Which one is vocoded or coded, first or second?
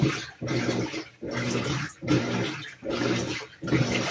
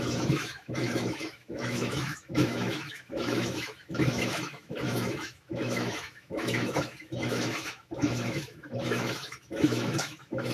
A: second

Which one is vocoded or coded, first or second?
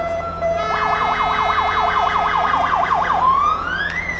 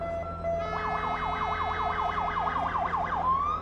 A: first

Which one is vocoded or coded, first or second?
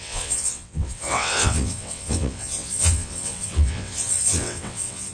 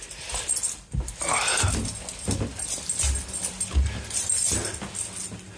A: first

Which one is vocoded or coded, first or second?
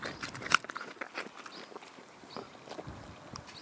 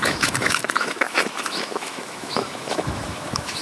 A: second